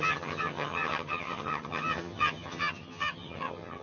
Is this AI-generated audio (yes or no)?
yes